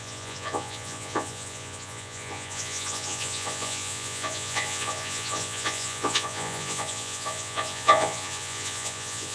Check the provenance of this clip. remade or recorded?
remade